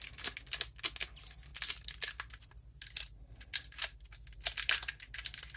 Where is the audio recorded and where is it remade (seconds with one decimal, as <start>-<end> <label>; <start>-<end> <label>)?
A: 0.0-5.6 recorded